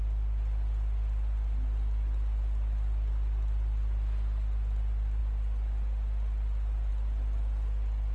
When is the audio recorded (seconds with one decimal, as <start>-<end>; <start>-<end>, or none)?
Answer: 0.0-8.1